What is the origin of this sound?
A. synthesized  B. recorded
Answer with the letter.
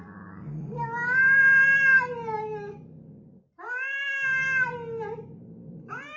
B